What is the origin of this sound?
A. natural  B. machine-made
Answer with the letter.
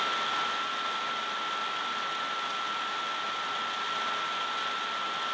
A